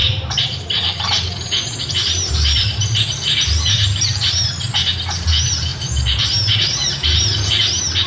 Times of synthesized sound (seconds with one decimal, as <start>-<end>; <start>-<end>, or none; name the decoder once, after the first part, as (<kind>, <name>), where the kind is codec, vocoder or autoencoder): 0.0-4.7 (vocoder, BigVGAN v2); 5.7-7.5

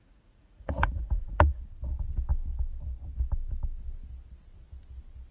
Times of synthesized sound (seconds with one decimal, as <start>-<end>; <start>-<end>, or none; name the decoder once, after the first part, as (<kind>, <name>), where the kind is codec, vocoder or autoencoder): 0.0-1.6 (vocoder, Vocos)

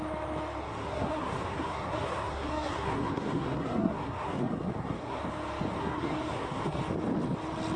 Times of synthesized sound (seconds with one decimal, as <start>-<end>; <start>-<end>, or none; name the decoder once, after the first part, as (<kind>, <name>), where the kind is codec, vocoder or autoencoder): 0.6-5.2 (codec, SNAC); 5.8-6.8

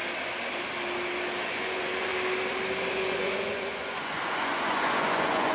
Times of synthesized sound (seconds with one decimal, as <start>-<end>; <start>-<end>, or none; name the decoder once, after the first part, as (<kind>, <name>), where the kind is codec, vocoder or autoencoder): 1.5-2.1 (vocoder, Vocos); 2.9-5.5

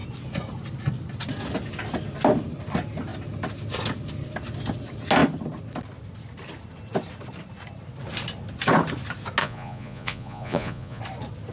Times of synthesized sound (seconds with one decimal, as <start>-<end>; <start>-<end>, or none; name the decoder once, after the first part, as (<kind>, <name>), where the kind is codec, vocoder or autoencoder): 9.4-11.0 (vocoder, Vocos)

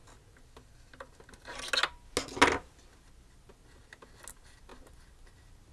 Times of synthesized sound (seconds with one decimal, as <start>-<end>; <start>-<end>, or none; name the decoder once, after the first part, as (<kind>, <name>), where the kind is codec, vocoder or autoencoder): none

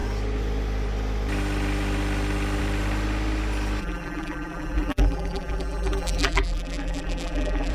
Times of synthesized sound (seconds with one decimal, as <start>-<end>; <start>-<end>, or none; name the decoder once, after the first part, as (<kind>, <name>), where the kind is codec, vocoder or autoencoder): 3.8-7.7 (vocoder, BigVGAN v2)